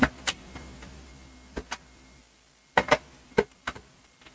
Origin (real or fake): real